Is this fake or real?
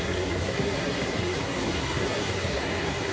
fake